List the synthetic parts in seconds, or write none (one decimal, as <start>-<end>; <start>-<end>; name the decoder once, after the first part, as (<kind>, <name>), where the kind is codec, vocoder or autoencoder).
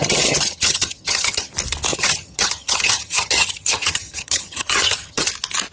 0.0-1.5 (vocoder, HiFi-GAN); 1.9-5.3